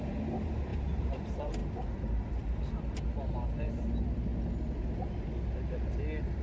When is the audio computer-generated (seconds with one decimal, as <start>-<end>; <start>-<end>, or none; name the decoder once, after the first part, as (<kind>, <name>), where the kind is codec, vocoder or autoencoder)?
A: 0.0-4.3 (vocoder, BigVGAN v2)